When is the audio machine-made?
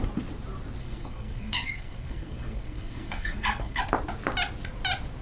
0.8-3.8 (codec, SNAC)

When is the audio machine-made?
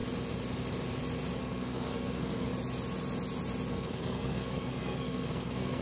1.4-2.5 (codec, SNAC); 3.7-5.8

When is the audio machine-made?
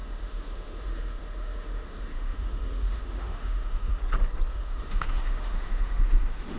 0.0-4.0 (autoencoder, DAC-VAE); 4.5-6.6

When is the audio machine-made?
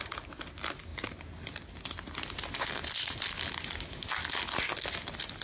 none